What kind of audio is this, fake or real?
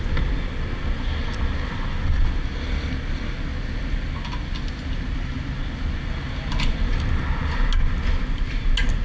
real